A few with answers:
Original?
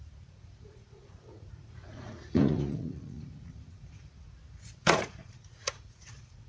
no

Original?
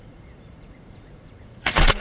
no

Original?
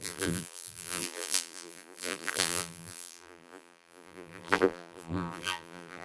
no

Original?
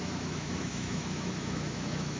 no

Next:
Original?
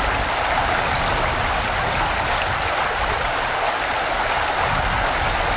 yes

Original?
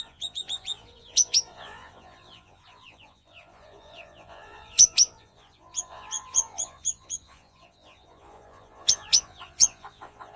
no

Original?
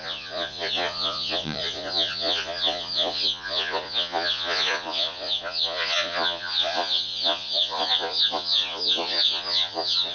no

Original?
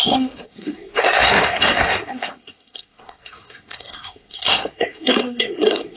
no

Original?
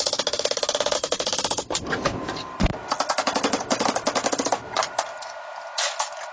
yes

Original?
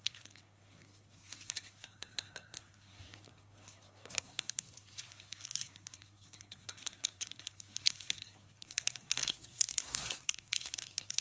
no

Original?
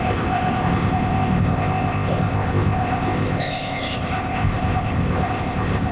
no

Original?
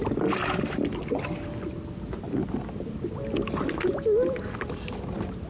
yes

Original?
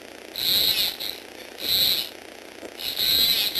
yes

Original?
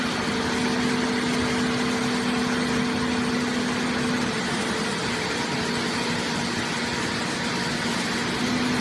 yes